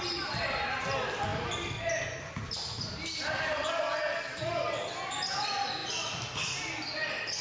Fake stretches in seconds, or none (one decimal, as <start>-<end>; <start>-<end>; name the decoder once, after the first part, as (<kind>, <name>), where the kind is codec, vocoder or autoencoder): none